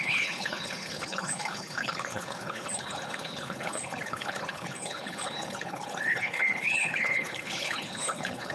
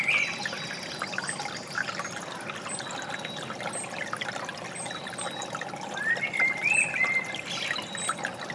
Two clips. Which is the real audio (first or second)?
second